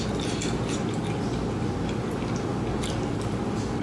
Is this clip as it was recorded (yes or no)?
yes